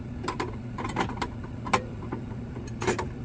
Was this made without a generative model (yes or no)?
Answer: yes